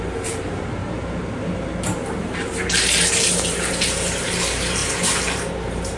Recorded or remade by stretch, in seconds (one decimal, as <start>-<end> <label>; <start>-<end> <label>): 0.0-6.0 remade